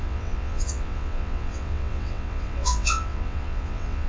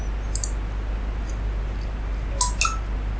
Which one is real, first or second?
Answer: second